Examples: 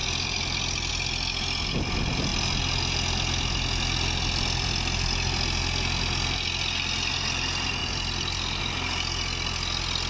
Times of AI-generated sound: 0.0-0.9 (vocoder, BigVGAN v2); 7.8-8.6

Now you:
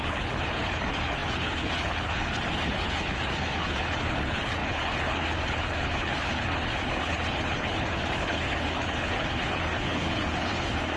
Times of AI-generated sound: 0.0-11.0 (codec, HILCodec)